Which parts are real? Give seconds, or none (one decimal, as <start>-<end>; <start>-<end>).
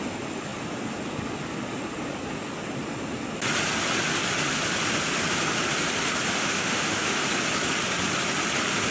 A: 0.0-6.4; 7.2-8.9